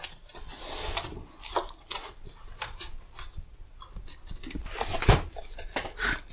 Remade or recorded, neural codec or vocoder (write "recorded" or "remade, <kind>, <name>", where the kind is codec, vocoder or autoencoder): recorded